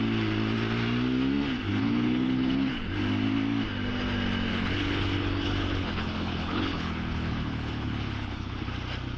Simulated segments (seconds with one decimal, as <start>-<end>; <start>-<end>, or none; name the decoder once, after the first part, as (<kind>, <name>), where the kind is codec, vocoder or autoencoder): 1.7-2.9 (codec, HILCodec); 4.5-8.7